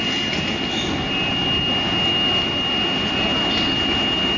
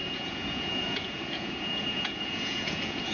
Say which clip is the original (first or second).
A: first